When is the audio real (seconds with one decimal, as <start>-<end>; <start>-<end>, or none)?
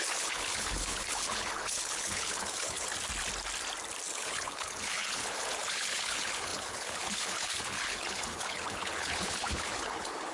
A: 2.9-4.1